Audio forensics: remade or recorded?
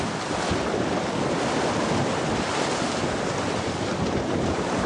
recorded